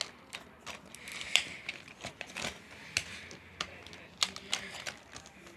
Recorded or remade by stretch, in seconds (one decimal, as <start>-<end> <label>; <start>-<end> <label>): 0.0-1.1 recorded; 1.1-2.1 remade; 2.1-5.6 recorded